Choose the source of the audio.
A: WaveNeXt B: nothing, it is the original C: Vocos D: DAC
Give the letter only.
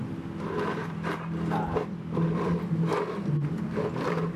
B